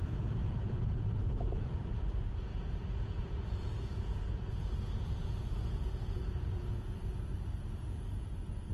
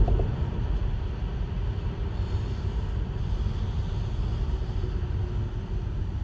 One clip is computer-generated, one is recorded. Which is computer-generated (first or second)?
first